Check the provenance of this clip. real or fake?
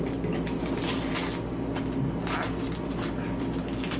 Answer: real